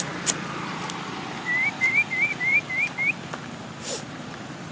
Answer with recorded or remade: remade